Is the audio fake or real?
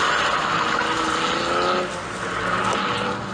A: real